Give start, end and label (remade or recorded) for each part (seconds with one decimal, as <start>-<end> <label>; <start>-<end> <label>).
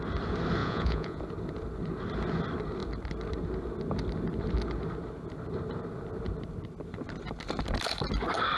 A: 0.0-0.6 recorded; 0.6-1.2 remade; 1.2-8.6 recorded